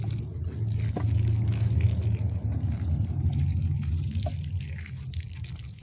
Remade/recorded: recorded